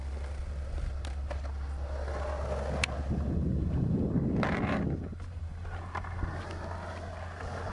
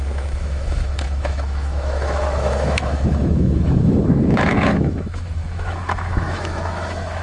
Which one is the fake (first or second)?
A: second